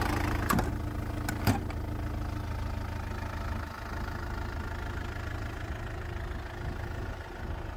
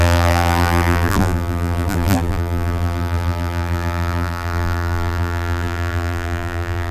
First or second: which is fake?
second